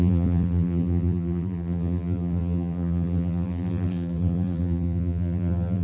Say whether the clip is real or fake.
fake